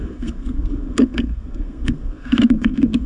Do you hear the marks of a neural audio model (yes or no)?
yes